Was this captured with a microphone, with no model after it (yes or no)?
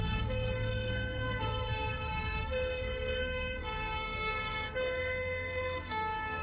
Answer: no